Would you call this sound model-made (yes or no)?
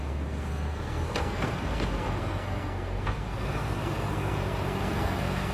yes